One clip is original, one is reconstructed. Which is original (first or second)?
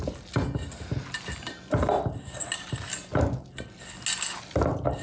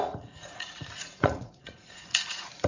first